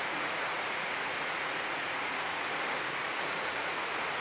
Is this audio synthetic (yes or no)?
yes